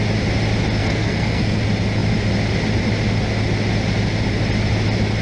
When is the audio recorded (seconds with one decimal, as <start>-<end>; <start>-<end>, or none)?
0.0-0.8; 1.6-5.2

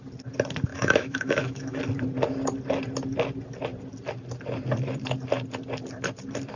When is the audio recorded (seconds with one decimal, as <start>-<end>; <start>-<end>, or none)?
0.0-0.7; 1.8-6.6

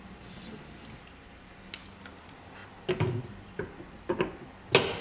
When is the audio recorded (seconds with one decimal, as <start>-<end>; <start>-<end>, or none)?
0.0-5.0

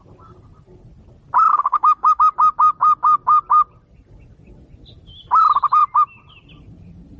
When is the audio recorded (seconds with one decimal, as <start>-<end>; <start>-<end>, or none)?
0.0-1.5; 2.2-7.2

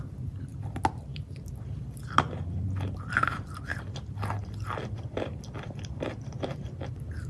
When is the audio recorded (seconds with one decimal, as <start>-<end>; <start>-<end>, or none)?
none